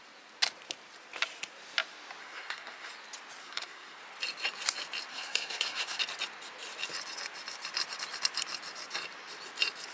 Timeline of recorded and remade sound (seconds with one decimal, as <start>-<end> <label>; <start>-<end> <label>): 0.0-2.2 recorded; 2.2-2.9 remade; 2.9-3.4 recorded; 3.4-4.0 remade; 4.0-5.1 recorded; 5.1-6.0 remade; 6.0-9.9 recorded